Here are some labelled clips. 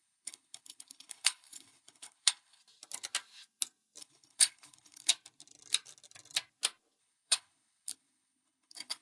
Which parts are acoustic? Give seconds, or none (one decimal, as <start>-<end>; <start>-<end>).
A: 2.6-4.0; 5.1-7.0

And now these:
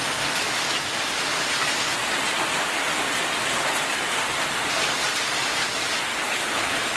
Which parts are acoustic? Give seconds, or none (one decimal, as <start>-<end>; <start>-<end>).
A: 0.0-6.1

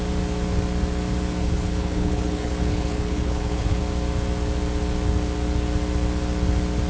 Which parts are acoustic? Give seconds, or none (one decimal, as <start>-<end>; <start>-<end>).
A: 0.0-1.4; 3.8-6.9

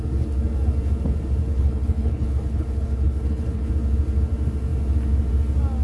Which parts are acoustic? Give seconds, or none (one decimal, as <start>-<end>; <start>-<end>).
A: 0.0-1.4; 3.7-5.8

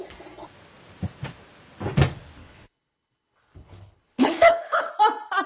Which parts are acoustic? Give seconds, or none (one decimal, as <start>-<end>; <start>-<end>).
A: 0.0-2.4; 4.9-5.5

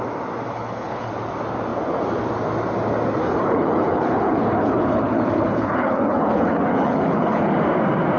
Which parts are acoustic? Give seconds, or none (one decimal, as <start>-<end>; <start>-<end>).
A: 0.0-0.5; 1.1-3.2; 7.6-8.2